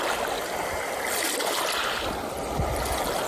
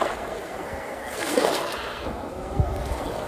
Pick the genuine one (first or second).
first